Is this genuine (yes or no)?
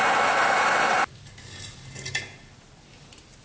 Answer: yes